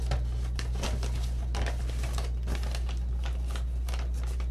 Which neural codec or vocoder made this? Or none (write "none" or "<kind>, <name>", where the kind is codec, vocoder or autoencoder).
none